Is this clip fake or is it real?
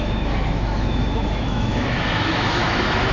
fake